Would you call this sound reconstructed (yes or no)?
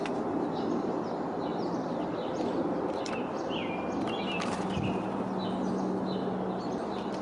no